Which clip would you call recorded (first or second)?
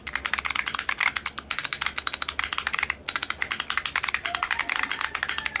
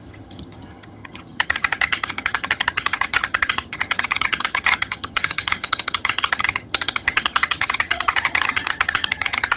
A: first